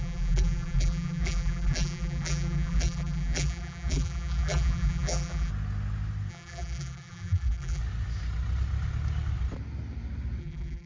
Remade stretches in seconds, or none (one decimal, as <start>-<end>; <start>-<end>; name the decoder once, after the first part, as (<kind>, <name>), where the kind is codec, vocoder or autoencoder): 0.0-5.5 (vocoder, BigVGAN v2); 6.3-7.8; 10.4-10.9